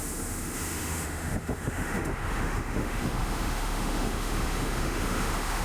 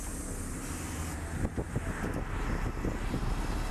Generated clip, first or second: first